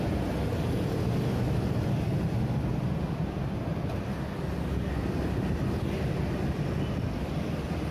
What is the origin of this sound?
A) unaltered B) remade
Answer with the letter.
A